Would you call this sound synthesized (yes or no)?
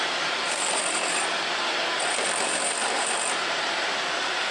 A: yes